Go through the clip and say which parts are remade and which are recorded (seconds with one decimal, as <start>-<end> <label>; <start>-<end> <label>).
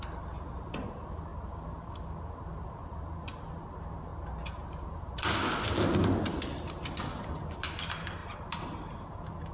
0.0-9.5 recorded